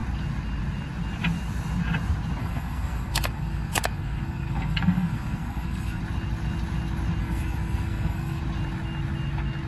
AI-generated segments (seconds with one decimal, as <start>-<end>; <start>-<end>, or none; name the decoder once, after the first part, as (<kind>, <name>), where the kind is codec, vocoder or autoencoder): 2.4-6.0 (codec, SNAC); 7.2-8.4